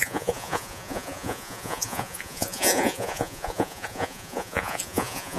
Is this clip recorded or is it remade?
remade